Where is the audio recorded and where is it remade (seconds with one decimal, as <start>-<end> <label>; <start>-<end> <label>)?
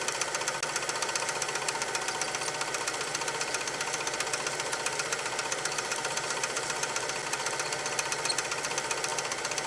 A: 0.0-9.7 recorded